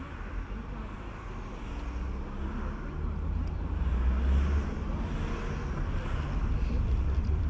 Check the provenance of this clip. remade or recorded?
recorded